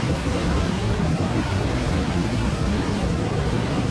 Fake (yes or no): yes